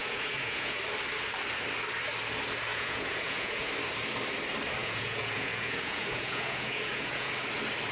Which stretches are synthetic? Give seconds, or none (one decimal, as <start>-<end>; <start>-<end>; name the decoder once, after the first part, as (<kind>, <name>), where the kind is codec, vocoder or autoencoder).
0.0-0.8 (vocoder, Vocos); 2.7-3.7; 4.8-7.3